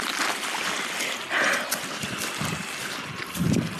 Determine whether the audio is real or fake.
real